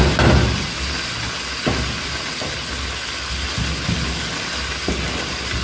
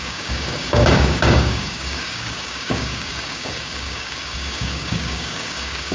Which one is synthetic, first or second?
second